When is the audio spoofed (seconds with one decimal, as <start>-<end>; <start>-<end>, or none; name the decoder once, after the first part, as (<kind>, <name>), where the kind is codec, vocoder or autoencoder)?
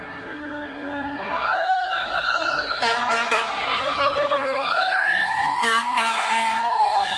0.0-7.2 (codec, SNAC)